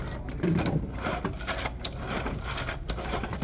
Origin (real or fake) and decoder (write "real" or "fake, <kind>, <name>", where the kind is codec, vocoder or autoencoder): real